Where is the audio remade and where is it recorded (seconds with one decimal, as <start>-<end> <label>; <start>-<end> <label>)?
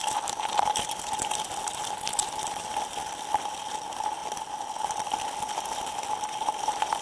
0.0-7.0 recorded